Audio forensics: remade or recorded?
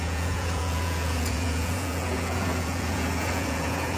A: remade